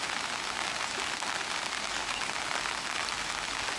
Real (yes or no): yes